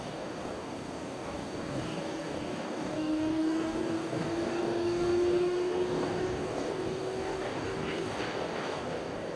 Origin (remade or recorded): remade